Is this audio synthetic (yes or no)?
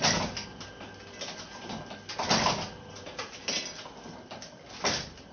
no